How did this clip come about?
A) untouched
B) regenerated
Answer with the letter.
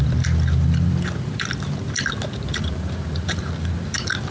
B